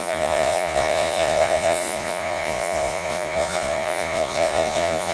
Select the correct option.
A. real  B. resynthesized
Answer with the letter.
B